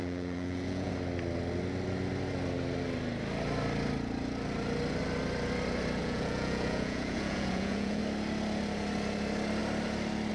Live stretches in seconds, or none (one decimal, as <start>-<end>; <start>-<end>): 0.9-6.0; 8.0-10.3